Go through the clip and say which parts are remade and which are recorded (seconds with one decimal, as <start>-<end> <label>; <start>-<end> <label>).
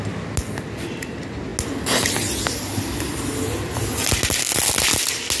0.0-5.4 recorded